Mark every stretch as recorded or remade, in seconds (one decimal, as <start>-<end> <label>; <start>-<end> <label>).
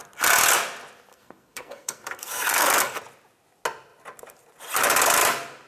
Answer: 0.0-1.1 recorded; 1.1-3.0 remade; 3.0-5.7 recorded